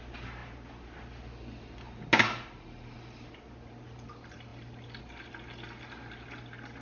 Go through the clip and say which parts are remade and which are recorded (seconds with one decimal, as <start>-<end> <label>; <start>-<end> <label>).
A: 0.0-6.8 recorded